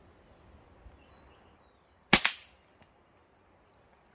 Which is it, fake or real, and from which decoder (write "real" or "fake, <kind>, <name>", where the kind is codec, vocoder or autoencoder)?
real